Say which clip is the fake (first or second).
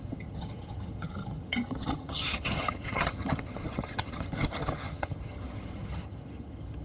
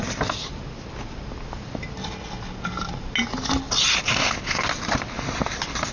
first